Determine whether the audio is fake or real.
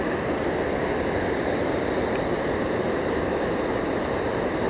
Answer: real